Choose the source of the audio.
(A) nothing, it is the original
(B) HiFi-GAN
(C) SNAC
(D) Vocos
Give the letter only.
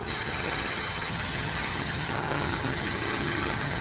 B